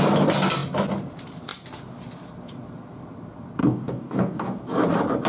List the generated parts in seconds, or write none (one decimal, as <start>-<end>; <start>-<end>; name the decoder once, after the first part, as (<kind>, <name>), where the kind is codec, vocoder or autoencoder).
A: 3.6-4.6 (codec, DAC)